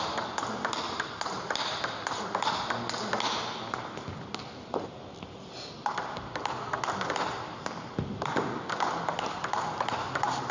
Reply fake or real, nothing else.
real